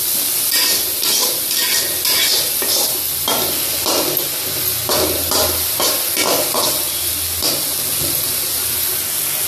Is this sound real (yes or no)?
yes